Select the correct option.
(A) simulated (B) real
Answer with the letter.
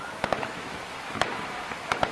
A